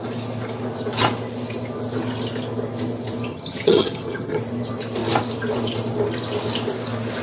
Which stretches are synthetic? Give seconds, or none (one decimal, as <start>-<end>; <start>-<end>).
3.3-4.4